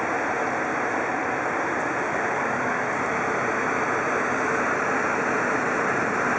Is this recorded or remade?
recorded